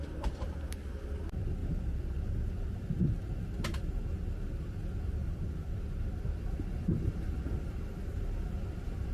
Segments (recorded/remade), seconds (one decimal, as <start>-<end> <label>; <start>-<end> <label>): 0.0-9.1 recorded